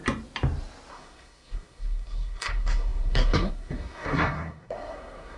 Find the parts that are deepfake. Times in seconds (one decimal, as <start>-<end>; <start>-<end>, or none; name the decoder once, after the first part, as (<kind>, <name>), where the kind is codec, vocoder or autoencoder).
0.9-5.4 (codec, SNAC)